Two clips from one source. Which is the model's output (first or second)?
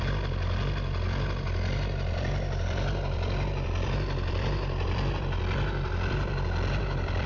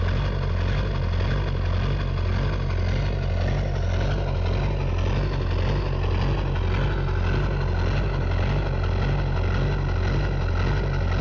first